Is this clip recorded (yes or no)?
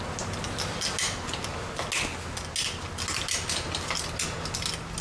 yes